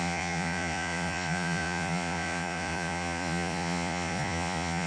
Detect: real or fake fake